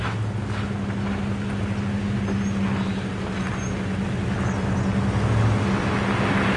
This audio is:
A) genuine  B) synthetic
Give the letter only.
A